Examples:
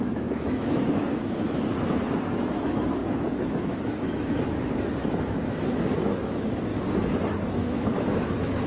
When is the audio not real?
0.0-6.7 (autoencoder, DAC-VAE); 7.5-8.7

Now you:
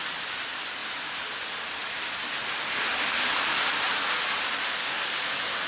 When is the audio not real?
none

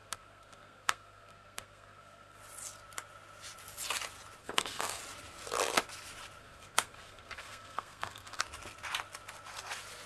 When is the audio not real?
0.0-2.4 (codec, SNAC); 4.4-5.0; 6.4-8.4

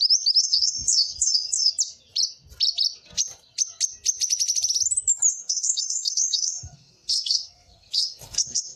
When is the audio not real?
0.4-1.7 (codec, SNAC); 5.3-8.8

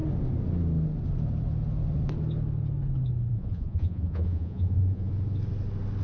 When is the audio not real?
3.3-5.1 (vocoder, Vocos)

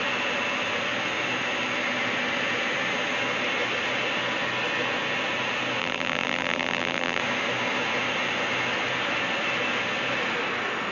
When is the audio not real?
5.8-7.2 (vocoder, BigVGAN v2)

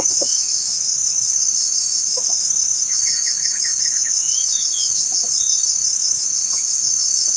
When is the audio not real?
0.0-7.4 (autoencoder, DAC-VAE)